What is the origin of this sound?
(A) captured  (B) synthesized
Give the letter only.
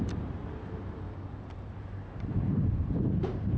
B